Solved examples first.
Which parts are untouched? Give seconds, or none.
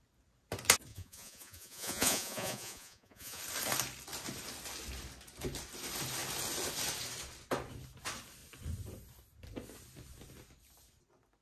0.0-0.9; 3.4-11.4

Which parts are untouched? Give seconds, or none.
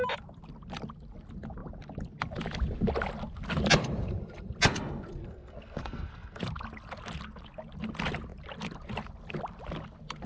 0.0-5.2; 6.4-10.3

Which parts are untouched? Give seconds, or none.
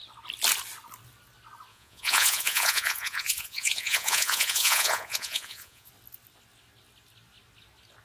0.0-1.7; 5.9-8.0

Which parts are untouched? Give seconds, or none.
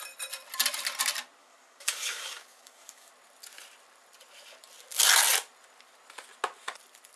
0.0-1.4; 3.1-7.2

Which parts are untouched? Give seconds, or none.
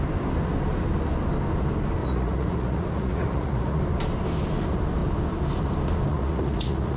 0.0-2.0; 3.8-6.1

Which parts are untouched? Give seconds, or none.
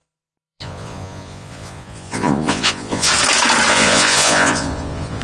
3.1-3.7